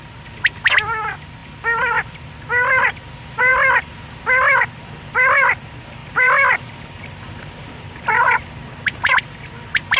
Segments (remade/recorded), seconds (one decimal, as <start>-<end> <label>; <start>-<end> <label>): 0.0-1.4 recorded; 1.4-2.2 remade; 2.2-6.0 recorded; 6.0-7.9 remade; 7.9-10.0 recorded